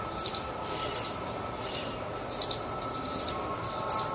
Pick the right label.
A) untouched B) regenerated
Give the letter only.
A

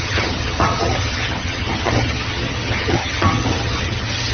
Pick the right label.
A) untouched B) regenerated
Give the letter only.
B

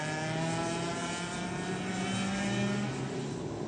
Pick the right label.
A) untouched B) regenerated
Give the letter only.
A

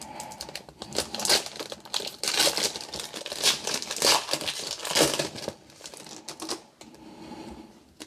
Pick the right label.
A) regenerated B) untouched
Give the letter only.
B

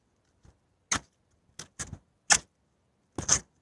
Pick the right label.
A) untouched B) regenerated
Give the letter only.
A